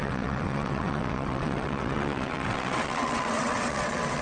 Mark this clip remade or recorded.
remade